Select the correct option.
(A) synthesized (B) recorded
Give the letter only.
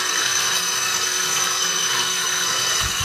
A